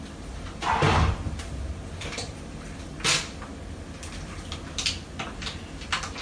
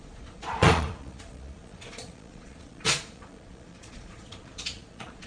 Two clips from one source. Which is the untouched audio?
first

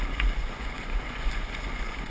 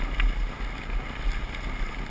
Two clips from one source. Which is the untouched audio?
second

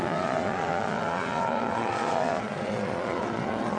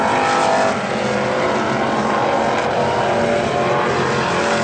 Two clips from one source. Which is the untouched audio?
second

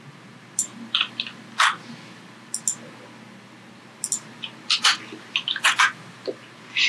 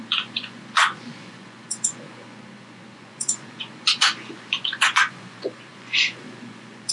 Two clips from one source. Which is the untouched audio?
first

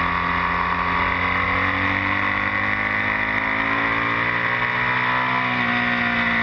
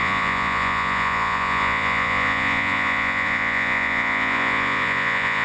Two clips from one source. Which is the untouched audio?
first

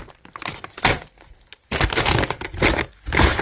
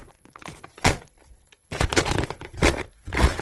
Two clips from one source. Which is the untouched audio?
first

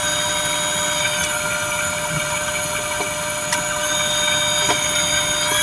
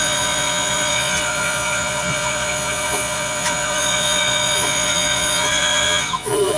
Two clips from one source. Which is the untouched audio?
first